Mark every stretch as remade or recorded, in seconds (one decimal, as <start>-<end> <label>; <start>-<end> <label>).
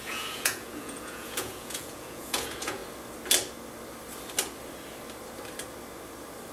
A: 0.0-2.8 remade; 2.8-6.5 recorded